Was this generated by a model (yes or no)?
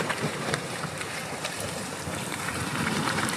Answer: yes